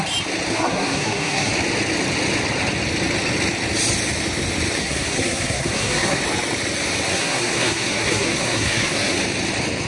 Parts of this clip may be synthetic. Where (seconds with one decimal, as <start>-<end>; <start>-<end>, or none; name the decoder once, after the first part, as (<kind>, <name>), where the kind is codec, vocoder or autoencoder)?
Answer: 0.5-1.5 (codec, SNAC); 4.8-6.2; 7.1-9.2